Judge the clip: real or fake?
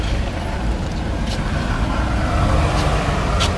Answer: real